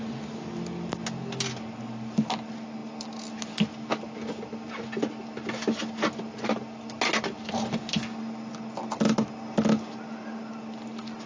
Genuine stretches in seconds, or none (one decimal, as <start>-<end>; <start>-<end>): 0.0-11.3

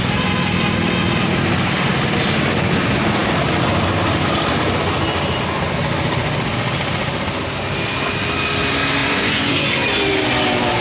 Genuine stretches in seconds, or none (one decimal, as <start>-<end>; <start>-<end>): 0.0-9.0; 9.8-10.8

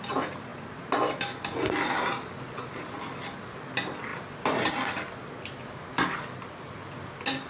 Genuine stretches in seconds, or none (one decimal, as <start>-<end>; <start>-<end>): 0.0-7.5

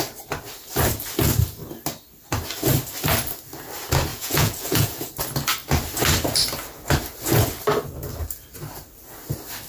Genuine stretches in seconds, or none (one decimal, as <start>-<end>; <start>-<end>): 0.0-4.1; 5.1-9.7

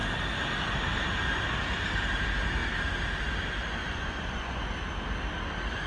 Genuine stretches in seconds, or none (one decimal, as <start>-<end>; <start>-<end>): 0.0-3.8; 4.7-5.9

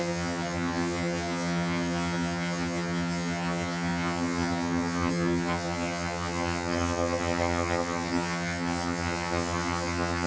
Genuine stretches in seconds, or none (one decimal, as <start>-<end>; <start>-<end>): none

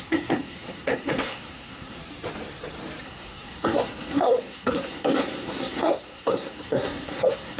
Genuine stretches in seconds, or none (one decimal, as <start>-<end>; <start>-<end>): 2.0-3.0